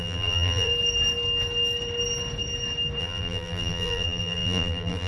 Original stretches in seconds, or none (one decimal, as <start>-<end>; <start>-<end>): 0.7-3.0